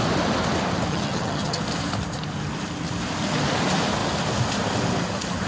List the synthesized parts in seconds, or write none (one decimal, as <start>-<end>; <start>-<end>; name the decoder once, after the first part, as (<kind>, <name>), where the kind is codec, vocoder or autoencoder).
0.9-1.6 (vocoder, HiFi-GAN)